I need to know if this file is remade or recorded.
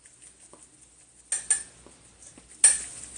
recorded